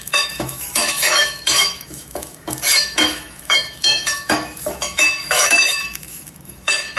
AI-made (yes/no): yes